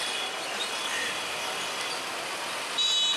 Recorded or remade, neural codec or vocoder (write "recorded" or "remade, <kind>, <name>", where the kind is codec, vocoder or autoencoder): recorded